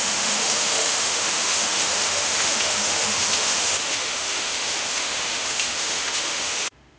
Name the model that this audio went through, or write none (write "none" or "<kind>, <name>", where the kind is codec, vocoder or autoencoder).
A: autoencoder, DAC-VAE